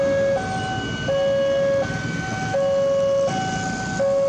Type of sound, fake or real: real